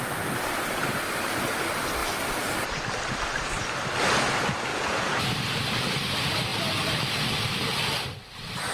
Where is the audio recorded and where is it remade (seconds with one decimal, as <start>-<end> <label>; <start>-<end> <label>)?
0.0-4.7 recorded; 4.7-5.2 remade; 5.2-8.7 recorded